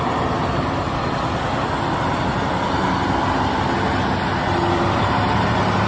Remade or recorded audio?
recorded